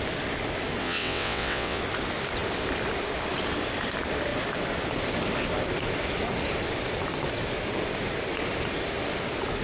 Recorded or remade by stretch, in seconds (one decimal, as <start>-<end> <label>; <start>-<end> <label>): 0.0-0.8 recorded; 0.8-1.8 remade; 1.8-9.6 recorded